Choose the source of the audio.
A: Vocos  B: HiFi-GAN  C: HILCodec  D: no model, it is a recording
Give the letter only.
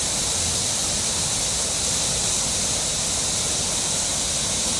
D